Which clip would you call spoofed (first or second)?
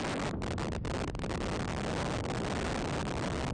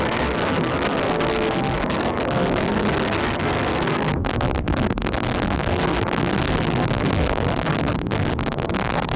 second